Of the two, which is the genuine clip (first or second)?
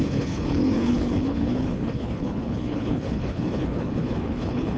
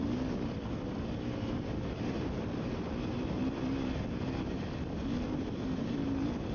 second